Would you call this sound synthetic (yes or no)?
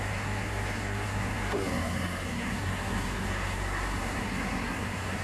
yes